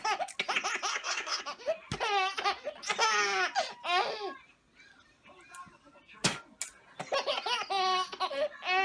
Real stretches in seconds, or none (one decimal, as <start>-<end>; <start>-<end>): 0.0-0.9; 1.4-8.8